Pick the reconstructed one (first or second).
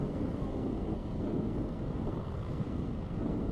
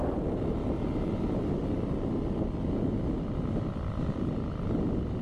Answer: first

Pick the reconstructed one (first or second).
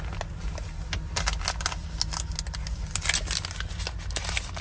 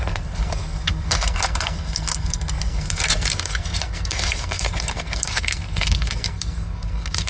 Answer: second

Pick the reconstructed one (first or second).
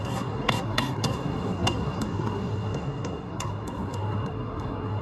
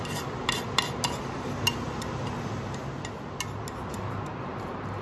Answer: first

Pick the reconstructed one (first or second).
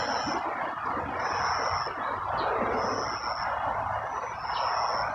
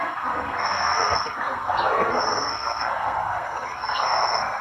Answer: second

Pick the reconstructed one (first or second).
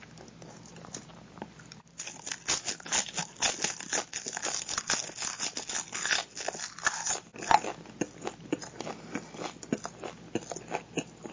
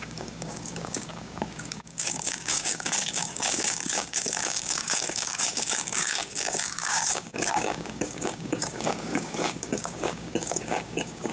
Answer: second